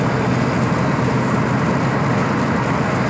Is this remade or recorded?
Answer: recorded